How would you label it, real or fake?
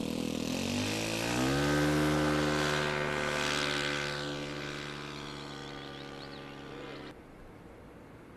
real